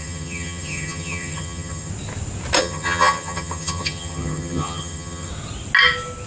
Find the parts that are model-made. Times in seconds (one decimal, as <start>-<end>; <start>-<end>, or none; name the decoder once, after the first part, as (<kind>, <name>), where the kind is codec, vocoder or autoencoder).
0.0-1.9 (vocoder, HiFi-GAN); 2.6-5.3